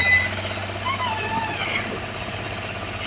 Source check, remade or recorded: recorded